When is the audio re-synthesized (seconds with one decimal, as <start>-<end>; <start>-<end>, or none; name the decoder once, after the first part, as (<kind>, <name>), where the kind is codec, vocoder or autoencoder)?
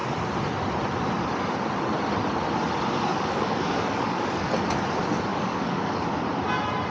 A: 3.1-4.5 (codec, DAC); 5.3-6.2